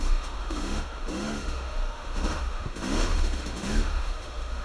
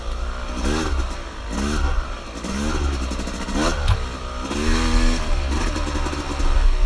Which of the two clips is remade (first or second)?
first